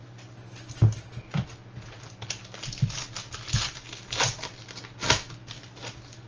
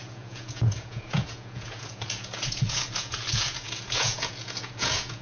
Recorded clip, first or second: first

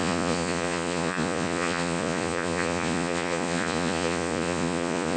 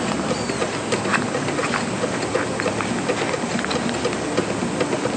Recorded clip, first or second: second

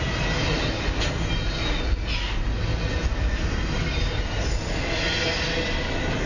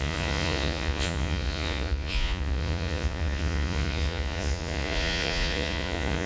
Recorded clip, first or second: first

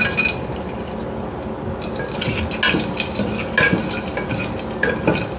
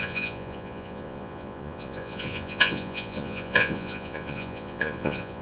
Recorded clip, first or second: first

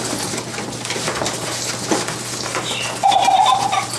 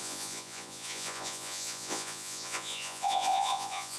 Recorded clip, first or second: first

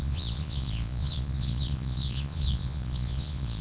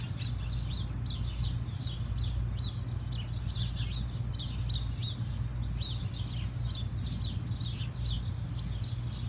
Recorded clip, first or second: second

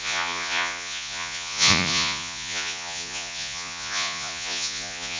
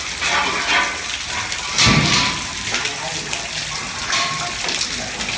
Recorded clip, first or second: second